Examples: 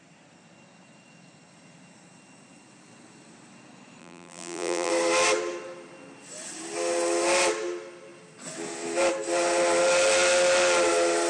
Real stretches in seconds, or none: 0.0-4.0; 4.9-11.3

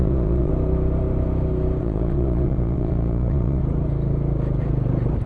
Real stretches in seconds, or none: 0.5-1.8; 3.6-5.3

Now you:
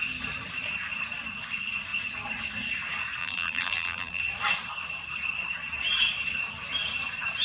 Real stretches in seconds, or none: 0.0-3.2; 4.2-7.4